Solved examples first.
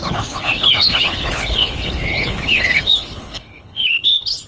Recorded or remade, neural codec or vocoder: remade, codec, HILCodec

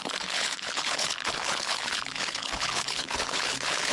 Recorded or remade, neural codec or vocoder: remade, codec, HILCodec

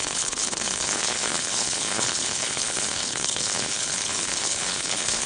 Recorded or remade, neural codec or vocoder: remade, codec, HILCodec